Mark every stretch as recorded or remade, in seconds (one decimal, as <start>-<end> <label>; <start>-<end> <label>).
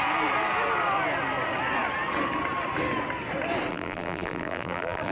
0.0-3.7 recorded; 3.7-5.1 remade